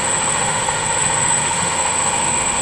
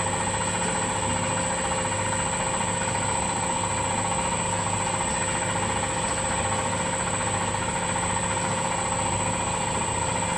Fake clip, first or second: first